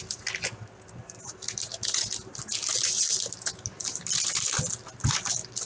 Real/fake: real